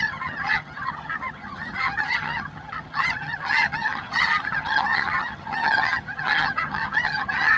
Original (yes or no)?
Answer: no